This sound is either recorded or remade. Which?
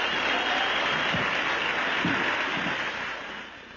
recorded